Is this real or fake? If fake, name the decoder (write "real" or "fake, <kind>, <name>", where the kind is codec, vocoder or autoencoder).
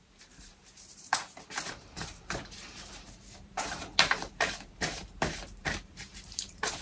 fake, vocoder, BigVGAN v2